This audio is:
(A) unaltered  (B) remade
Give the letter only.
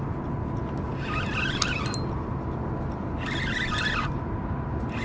A